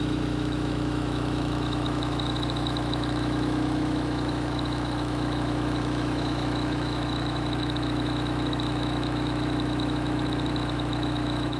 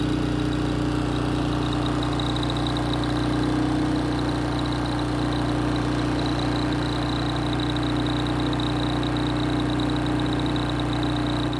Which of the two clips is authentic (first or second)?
second